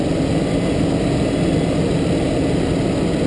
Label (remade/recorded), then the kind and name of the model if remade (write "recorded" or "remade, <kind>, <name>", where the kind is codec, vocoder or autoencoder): recorded